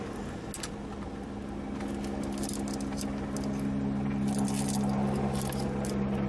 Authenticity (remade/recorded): recorded